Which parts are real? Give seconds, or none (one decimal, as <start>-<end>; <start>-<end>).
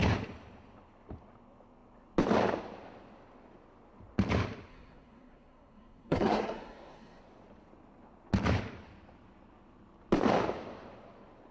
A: 0.0-4.7; 7.2-11.5